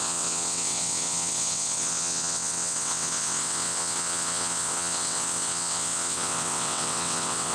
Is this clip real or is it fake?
fake